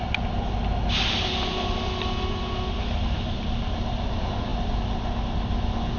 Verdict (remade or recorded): recorded